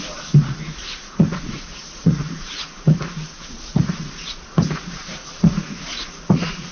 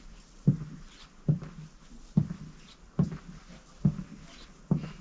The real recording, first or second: second